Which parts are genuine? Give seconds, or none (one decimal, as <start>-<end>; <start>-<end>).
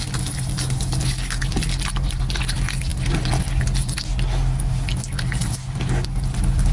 0.0-6.7